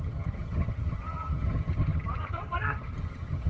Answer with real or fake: fake